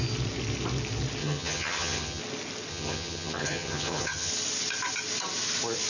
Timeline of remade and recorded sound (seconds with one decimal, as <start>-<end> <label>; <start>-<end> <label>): 0.0-1.2 recorded; 1.2-2.2 remade; 2.2-2.7 recorded; 2.7-4.3 remade; 4.3-5.9 recorded